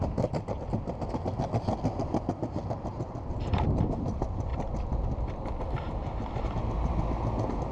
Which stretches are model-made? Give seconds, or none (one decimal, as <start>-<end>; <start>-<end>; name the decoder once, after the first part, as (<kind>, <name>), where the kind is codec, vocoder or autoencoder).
none